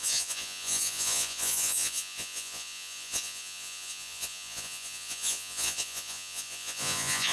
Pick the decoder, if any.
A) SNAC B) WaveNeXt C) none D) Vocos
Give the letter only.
D